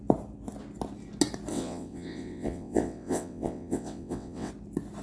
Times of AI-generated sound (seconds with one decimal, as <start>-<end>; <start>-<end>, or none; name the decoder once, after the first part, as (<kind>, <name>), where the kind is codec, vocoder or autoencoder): 1.5-4.5 (vocoder, WaveNeXt)